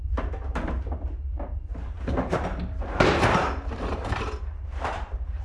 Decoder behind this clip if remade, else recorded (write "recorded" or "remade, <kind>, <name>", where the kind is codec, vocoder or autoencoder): remade, vocoder, BigVGAN v2